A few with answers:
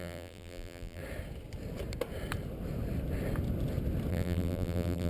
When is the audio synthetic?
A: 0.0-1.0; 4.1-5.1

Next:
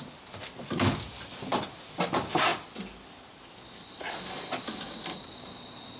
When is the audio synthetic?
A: none

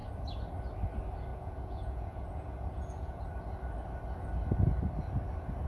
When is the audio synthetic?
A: 1.3-3.2

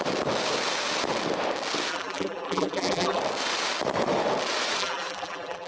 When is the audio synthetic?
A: 1.9-3.2; 4.8-5.7

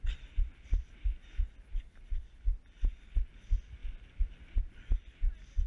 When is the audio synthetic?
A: none